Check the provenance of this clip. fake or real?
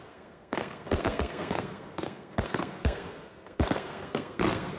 fake